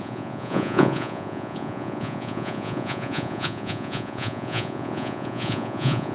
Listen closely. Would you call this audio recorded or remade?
remade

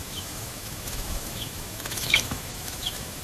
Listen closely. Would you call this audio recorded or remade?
remade